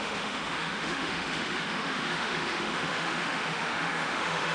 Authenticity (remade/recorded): remade